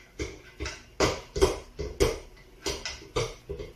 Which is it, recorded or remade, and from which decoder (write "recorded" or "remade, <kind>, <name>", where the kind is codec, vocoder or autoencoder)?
recorded